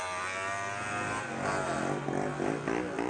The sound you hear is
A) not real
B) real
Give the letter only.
B